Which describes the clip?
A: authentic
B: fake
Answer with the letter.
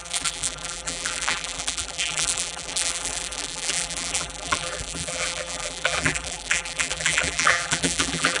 B